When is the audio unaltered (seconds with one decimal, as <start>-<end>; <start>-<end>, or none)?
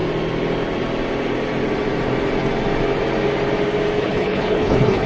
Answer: 0.0-4.0